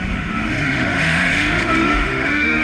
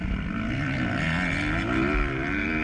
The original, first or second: second